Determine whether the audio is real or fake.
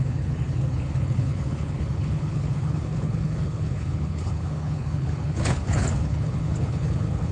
fake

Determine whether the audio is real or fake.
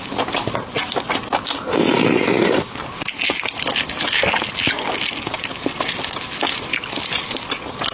real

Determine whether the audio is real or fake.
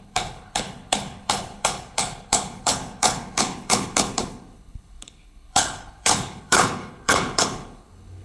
fake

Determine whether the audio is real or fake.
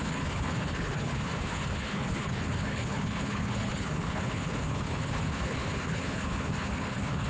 fake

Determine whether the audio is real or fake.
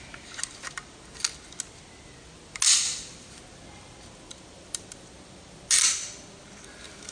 real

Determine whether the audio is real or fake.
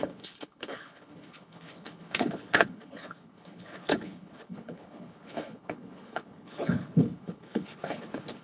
fake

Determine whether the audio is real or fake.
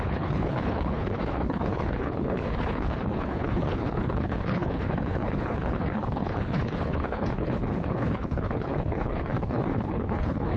fake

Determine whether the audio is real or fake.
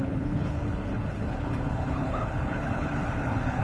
fake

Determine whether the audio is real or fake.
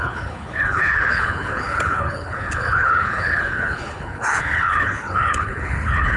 fake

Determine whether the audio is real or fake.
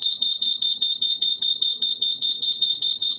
fake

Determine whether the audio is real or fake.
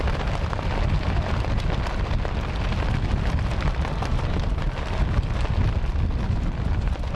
real